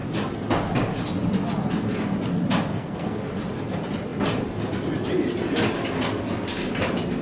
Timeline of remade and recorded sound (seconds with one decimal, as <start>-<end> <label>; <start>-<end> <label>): 0.0-2.7 recorded; 2.7-3.2 remade; 3.2-7.2 recorded